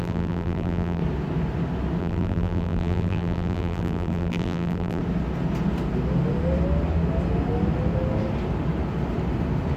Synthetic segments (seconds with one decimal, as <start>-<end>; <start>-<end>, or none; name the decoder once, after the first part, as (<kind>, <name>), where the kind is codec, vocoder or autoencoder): 0.0-1.0 (vocoder, BigVGAN v2); 2.0-5.0